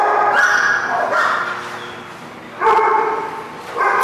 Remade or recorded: recorded